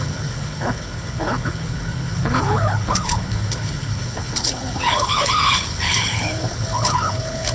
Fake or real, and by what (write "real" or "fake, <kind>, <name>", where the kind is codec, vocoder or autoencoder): fake, codec, HILCodec